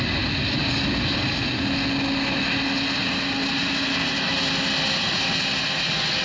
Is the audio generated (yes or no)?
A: no